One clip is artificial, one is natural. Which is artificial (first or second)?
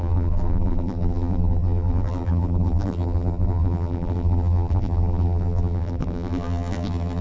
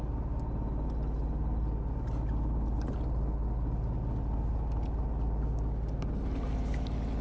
first